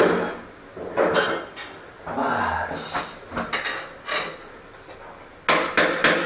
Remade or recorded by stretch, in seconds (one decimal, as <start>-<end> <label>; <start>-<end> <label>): 0.0-6.3 recorded